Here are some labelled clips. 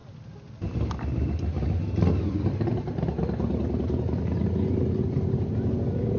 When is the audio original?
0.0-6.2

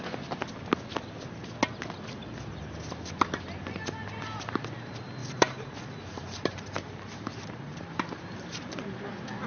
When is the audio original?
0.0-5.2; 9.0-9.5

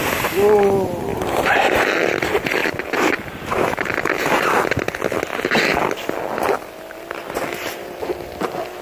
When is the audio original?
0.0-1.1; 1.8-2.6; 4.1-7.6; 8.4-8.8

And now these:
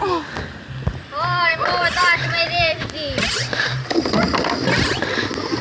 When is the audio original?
0.0-1.5; 4.1-5.6

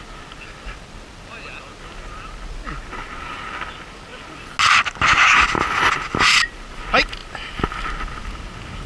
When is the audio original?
0.0-8.9

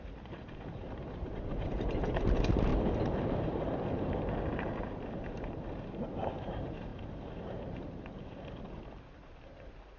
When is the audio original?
2.7-3.3

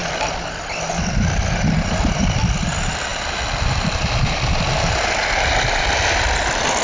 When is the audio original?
0.0-1.6

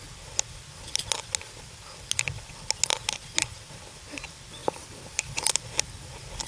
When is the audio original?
0.0-4.6; 5.5-6.5